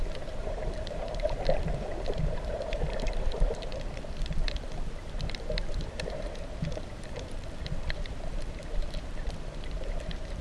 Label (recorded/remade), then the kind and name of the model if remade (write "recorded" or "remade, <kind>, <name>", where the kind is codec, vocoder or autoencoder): remade, vocoder, BigVGAN v2